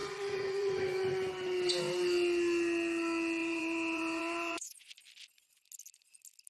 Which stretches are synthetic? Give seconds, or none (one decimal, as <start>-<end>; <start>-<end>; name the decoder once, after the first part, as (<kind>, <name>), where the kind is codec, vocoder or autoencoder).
0.0-1.3 (vocoder, Vocos); 3.4-4.9